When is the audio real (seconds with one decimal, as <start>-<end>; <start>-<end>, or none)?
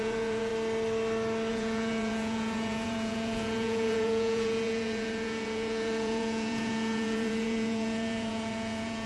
0.5-1.5